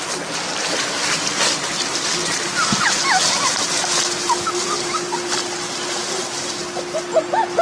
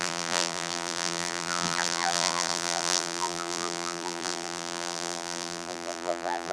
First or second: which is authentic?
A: first